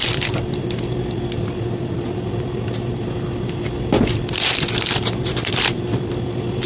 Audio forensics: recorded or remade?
remade